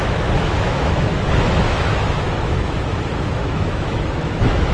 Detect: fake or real fake